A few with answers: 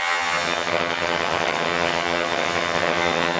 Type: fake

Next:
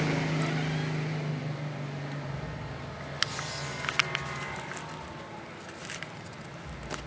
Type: real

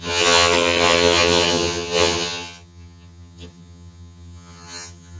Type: fake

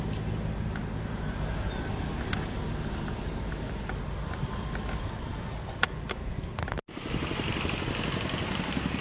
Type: real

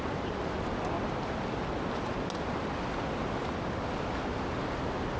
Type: real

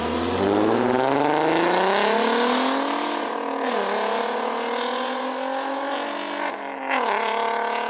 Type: real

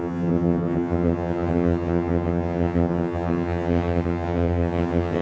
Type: fake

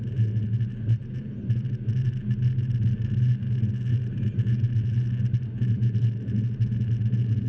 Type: real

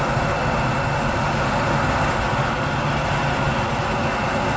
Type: real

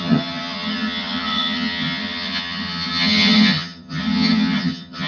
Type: fake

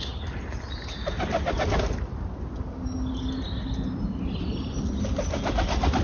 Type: real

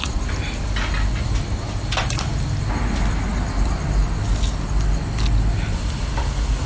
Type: real